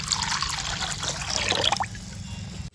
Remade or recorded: recorded